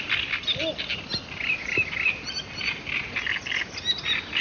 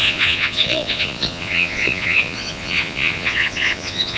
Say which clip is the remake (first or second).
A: second